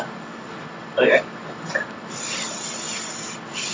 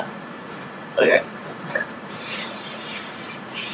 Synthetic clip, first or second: second